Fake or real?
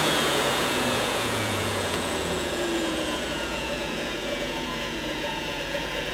fake